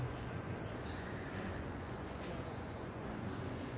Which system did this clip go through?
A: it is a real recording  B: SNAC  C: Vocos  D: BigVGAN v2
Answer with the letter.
C